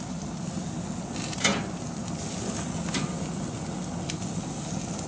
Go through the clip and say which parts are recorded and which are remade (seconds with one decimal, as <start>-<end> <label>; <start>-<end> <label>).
0.0-5.1 recorded